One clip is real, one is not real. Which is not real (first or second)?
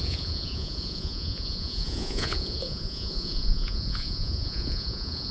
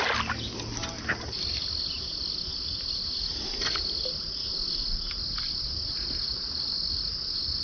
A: first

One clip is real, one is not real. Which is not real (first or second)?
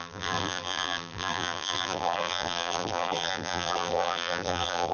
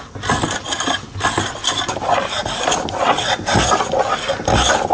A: first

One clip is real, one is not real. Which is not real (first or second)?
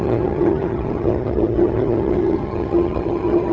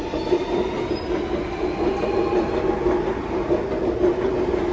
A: first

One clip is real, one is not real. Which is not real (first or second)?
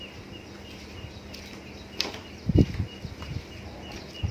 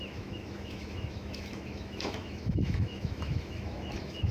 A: second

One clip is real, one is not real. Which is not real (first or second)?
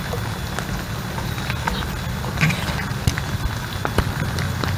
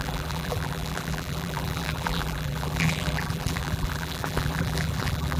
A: second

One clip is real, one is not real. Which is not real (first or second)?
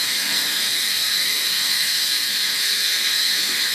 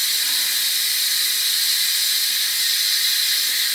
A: first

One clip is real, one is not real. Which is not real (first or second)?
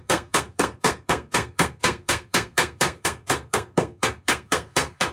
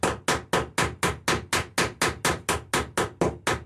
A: first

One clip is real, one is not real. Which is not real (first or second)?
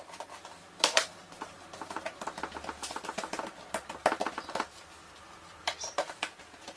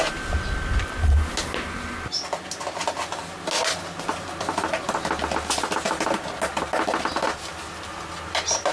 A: first